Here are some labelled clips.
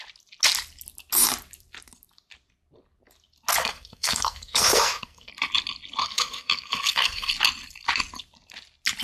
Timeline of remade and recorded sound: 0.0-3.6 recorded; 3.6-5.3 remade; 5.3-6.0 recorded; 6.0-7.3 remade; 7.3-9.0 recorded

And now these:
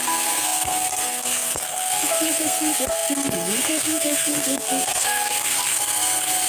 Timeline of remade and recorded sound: 0.0-6.5 remade

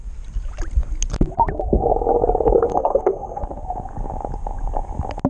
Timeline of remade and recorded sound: 0.0-2.7 recorded; 2.7-3.4 remade; 3.4-5.3 recorded

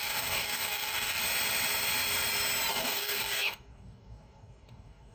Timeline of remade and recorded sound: 0.0-1.2 remade; 1.2-2.7 recorded; 2.7-5.1 remade